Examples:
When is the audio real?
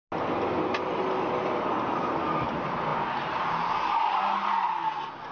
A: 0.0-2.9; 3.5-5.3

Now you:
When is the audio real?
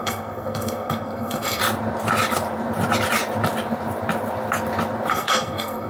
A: 1.6-5.1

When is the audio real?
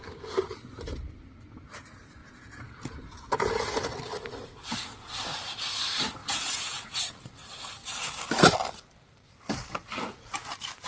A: 0.0-2.2; 3.6-6.2; 7.0-10.9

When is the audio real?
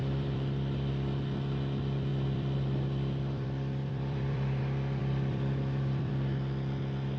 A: 0.9-2.1; 4.6-5.0; 6.1-7.2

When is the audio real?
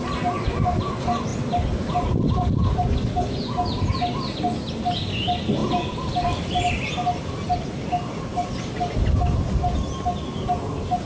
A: 0.0-1.3; 3.0-5.6; 6.5-8.3; 8.9-11.1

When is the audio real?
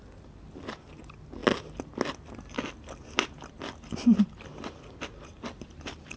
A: 0.0-6.2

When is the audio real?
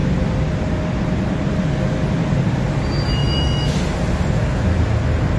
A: 0.0-3.2; 3.8-5.4